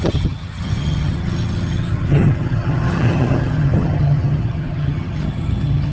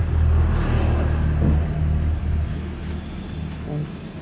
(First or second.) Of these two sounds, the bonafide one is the second